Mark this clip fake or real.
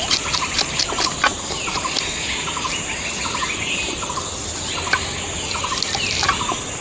real